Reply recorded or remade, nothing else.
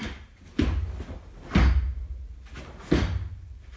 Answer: recorded